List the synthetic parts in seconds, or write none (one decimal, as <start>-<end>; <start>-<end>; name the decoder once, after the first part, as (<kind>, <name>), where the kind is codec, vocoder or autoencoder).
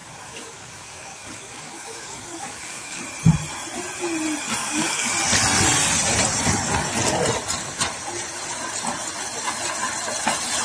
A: 0.0-3.0 (codec, DAC); 4.6-5.1